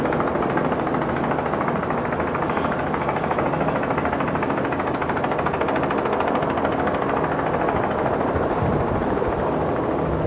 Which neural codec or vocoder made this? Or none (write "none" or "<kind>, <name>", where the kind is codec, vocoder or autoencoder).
none